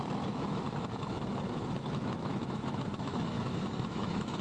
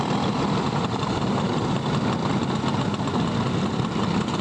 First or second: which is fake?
first